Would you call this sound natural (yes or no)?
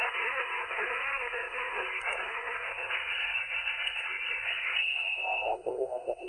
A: no